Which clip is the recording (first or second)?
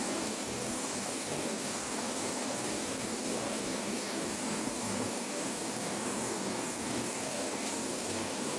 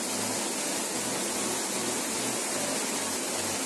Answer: second